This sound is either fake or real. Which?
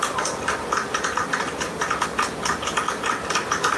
real